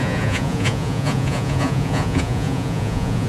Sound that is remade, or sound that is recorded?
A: remade